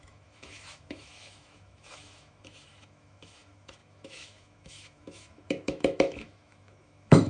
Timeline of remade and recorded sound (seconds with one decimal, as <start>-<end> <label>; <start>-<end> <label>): 0.0-7.3 remade